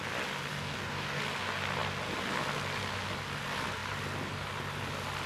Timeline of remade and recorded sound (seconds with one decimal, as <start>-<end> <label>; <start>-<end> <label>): 0.0-0.5 recorded; 0.5-1.2 remade; 1.2-5.3 recorded